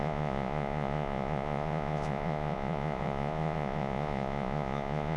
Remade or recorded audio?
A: remade